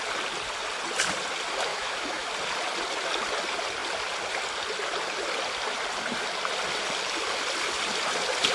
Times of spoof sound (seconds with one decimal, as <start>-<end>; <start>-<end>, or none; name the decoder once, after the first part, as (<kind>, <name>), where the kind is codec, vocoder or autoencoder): 1.7-2.3 (autoencoder, DAC-VAE)

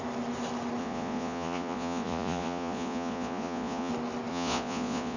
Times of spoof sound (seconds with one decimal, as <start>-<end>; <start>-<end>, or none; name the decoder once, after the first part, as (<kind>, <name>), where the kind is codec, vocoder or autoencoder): 0.8-3.9 (vocoder, Vocos); 4.3-5.2